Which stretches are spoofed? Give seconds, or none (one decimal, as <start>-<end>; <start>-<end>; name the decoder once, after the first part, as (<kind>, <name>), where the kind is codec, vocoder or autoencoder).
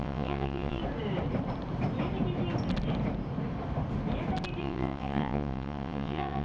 0.0-0.8 (vocoder, WaveNeXt); 4.6-6.4